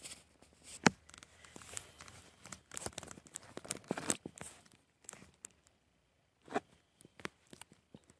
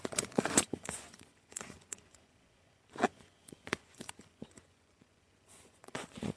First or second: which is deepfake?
second